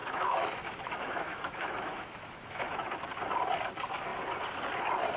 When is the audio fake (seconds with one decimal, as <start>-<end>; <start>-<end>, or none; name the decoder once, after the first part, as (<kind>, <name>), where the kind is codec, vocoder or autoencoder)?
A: 0.0-3.1 (autoencoder, DAC-VAE)

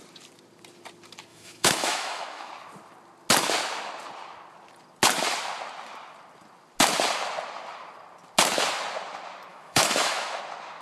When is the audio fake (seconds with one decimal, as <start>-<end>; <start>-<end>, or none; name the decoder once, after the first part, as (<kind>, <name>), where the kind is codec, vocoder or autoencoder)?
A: 1.3-2.5 (autoencoder, DAC-VAE); 9.5-10.4